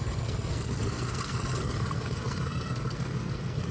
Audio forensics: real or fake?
fake